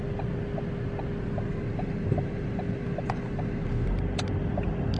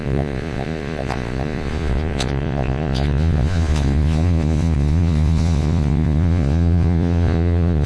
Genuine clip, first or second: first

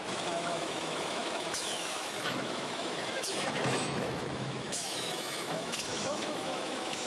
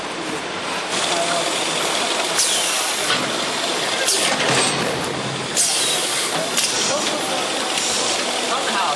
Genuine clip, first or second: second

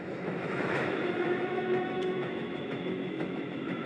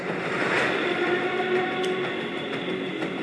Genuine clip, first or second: second